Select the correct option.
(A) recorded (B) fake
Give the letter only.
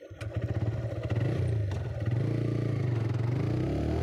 A